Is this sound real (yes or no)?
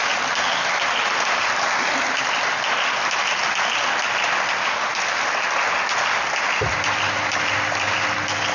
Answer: yes